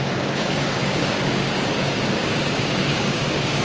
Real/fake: fake